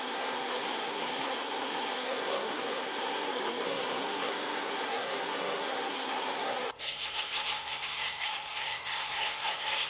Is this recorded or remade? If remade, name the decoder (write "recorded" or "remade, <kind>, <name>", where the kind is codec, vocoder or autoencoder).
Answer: remade, codec, SNAC